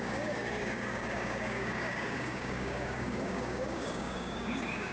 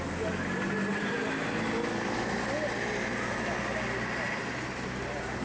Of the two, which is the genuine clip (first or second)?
second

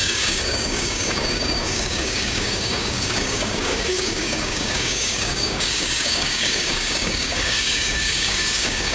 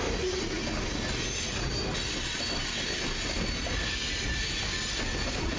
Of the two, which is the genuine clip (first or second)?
second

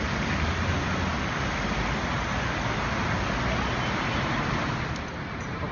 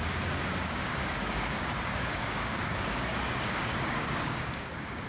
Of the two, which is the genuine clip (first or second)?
first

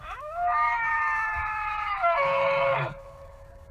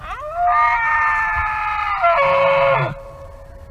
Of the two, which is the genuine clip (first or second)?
second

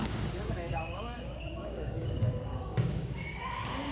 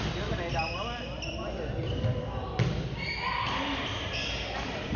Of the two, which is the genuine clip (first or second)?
second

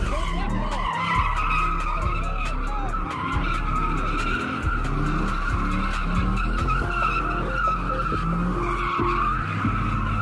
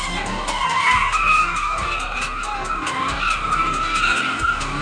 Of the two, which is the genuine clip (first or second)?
first